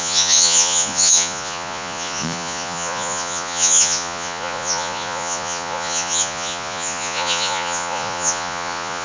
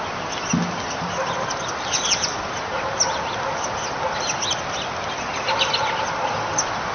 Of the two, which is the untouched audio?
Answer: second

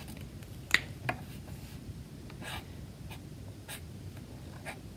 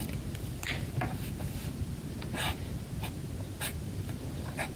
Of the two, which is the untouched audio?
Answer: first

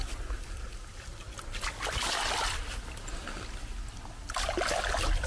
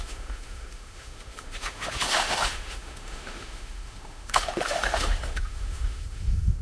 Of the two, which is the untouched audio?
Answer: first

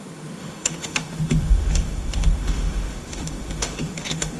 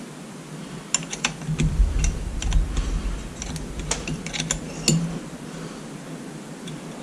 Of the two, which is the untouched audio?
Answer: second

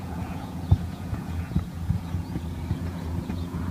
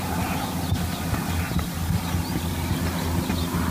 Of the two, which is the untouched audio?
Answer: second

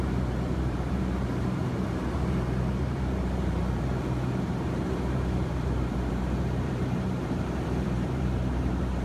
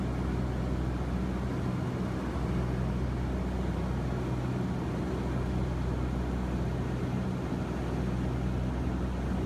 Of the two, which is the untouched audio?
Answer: second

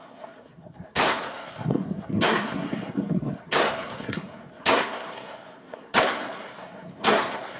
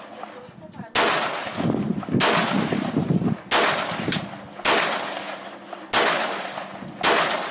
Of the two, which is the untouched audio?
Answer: second